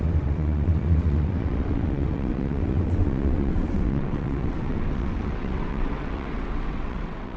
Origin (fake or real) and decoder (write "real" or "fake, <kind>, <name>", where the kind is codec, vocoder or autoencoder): fake, vocoder, WaveNeXt